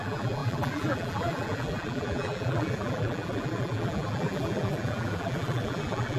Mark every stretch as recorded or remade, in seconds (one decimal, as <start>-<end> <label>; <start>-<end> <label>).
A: 0.0-6.2 remade